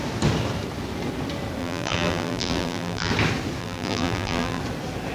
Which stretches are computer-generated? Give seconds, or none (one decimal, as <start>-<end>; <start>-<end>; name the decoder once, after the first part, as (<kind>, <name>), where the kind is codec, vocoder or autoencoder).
1.6-3.1 (vocoder, BigVGAN v2); 3.6-4.6